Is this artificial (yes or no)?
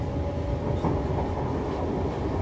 no